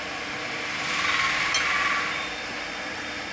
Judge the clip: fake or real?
real